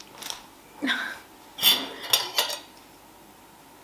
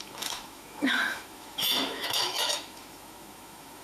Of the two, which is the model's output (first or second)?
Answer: second